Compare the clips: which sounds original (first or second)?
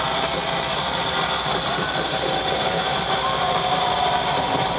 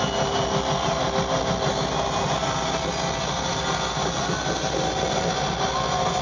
second